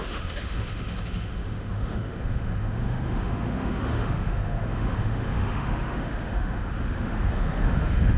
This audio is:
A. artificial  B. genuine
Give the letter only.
A